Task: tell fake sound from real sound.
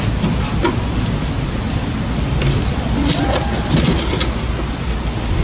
real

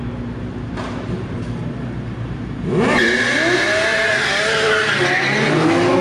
real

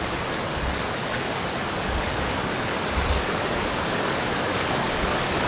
fake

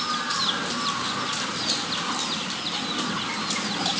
real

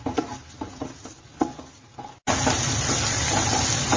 real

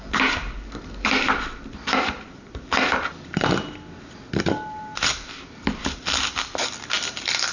real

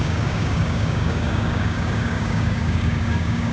fake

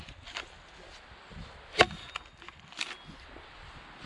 real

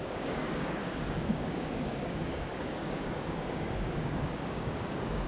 fake